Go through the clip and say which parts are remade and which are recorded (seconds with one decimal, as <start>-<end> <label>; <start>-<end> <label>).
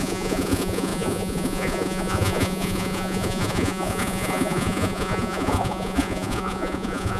0.0-7.2 remade